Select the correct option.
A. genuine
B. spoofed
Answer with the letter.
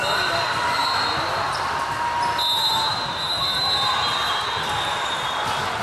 A